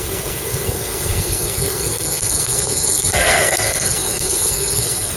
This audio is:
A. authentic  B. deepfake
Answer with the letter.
B